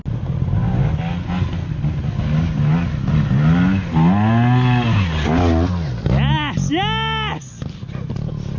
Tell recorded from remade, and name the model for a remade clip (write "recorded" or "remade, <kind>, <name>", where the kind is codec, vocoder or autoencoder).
recorded